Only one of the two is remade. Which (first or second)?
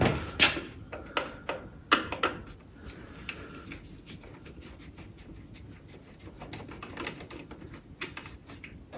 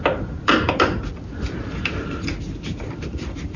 second